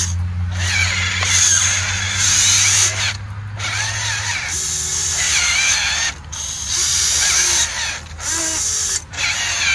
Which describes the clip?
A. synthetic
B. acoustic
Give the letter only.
B